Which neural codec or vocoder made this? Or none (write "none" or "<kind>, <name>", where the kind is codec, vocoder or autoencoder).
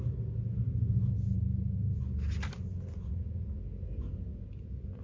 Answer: none